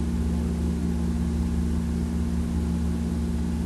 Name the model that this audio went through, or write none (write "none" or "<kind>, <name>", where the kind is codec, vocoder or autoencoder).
none